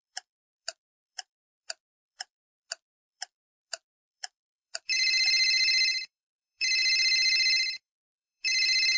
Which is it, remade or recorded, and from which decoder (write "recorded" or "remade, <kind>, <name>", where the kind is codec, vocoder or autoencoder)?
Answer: remade, vocoder, BigVGAN v2